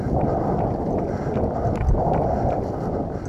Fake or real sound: real